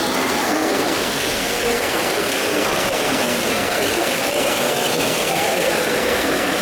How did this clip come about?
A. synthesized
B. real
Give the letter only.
A